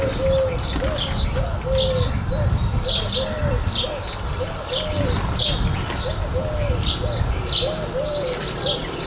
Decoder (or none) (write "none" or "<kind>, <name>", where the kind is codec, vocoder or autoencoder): none